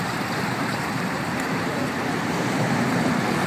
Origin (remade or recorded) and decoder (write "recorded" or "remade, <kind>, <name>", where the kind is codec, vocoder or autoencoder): remade, vocoder, BigVGAN v2